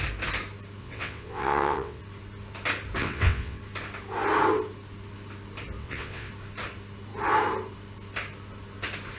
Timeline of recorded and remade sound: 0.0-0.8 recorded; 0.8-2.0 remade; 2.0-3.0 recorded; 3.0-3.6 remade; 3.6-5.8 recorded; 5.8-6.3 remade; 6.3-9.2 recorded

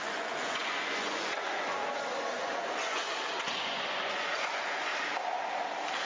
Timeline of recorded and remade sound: 0.0-1.8 remade; 1.8-2.3 recorded; 2.3-4.9 remade; 4.9-6.1 recorded

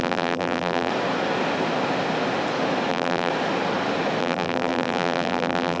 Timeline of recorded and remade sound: 0.0-0.9 remade; 0.9-2.9 recorded; 2.9-3.3 remade; 3.3-4.2 recorded; 4.2-5.8 remade

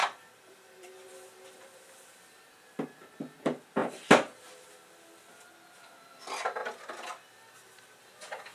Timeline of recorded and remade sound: 0.0-1.1 remade; 1.1-6.6 recorded; 6.6-8.0 remade; 8.0-8.5 recorded

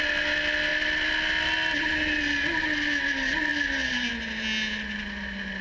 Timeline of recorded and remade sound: 0.0-5.6 recorded

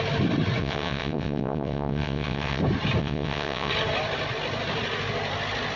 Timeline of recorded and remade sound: 0.0-0.6 recorded; 0.6-2.6 remade; 2.6-3.0 recorded; 3.0-3.7 remade; 3.7-5.8 recorded

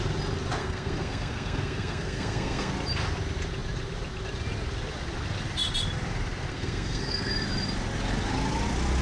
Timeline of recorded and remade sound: 0.0-0.6 recorded; 0.6-2.7 remade; 2.7-6.5 recorded; 6.5-7.3 remade; 7.3-9.0 recorded